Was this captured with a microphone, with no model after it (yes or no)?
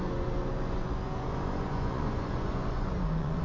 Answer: no